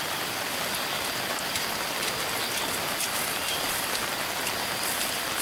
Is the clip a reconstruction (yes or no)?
no